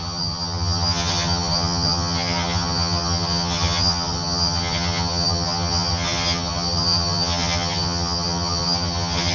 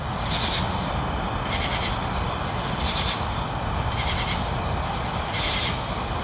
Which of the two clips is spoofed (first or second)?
first